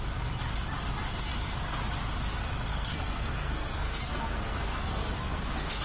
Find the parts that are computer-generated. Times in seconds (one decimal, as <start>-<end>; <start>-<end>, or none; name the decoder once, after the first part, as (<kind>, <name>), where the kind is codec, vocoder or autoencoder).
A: 2.7-5.8 (codec, SNAC)